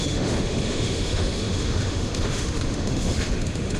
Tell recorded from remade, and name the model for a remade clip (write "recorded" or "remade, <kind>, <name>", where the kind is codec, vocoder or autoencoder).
remade, autoencoder, DAC-VAE